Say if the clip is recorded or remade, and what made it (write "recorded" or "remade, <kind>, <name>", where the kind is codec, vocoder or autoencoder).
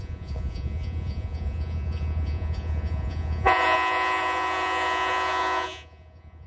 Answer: remade, vocoder, Vocos